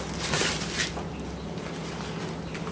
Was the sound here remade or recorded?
recorded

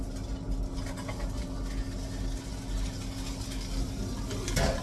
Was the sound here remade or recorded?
recorded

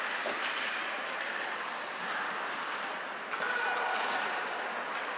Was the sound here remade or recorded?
recorded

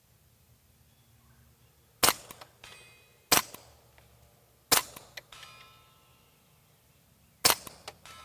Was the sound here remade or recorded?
recorded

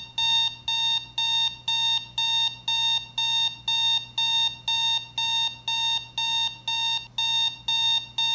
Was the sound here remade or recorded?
recorded